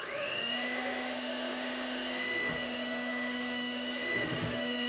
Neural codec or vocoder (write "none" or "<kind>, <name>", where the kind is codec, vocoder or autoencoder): autoencoder, DAC-VAE